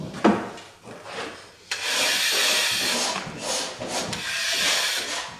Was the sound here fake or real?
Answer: real